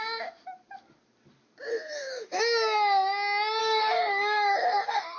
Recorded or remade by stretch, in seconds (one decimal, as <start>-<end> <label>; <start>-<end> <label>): 0.0-1.7 recorded; 1.7-2.4 remade; 2.4-3.6 recorded; 3.6-5.2 remade